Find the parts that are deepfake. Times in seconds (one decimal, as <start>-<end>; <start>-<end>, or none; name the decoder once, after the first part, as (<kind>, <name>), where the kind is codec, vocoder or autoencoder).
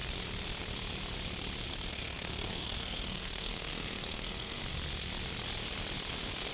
1.9-4.6 (codec, SNAC)